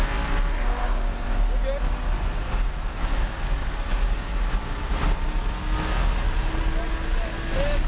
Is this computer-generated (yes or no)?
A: no